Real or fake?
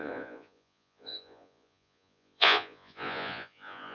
fake